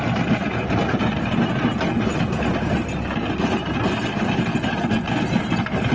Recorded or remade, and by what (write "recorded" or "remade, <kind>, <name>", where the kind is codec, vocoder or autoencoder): recorded